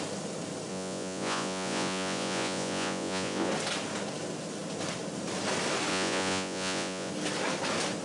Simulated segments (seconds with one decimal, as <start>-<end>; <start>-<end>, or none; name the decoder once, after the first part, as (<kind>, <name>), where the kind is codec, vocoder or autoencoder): 0.7-3.5 (vocoder, Vocos); 5.9-7.1

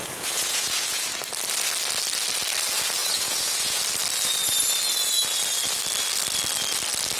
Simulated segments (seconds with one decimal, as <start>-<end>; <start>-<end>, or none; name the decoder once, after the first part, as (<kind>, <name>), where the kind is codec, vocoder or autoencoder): 0.0-1.0 (vocoder, Vocos); 3.0-3.8

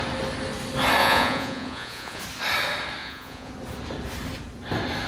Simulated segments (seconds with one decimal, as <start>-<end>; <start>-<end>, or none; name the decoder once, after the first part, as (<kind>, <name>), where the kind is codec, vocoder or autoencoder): 1.0-2.2 (vocoder, Vocos); 3.0-3.5

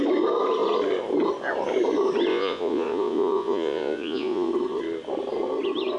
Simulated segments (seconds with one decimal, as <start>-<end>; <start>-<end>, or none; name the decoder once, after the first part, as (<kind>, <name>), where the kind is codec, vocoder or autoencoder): 2.3-4.5 (vocoder, Vocos)

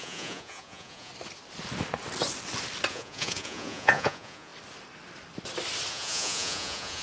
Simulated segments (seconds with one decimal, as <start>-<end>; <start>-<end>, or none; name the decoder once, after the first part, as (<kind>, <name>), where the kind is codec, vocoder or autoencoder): 0.0-1.1 (vocoder, Vocos); 2.9-4.5; 5.9-7.0